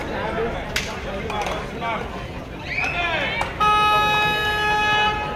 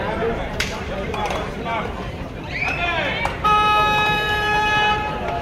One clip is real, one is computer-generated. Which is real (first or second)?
first